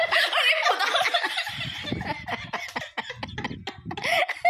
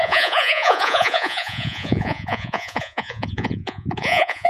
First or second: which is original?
first